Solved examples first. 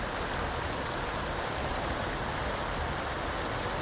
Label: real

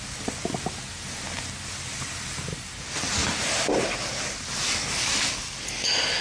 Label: real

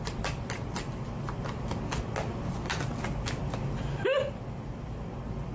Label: real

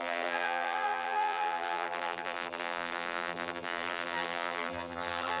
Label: fake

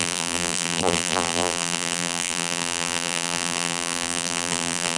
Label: fake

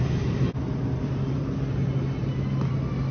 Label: real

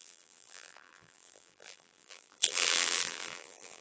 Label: fake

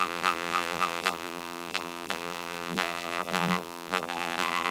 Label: fake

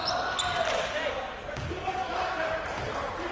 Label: real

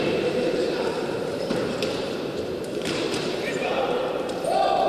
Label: fake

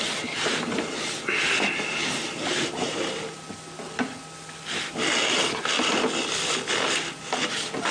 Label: real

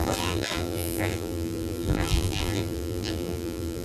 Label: fake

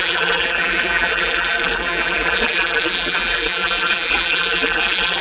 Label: fake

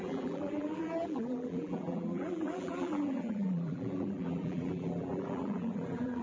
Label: fake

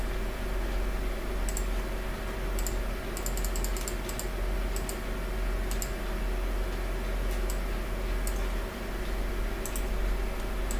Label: real